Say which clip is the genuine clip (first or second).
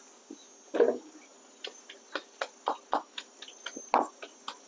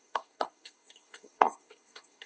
first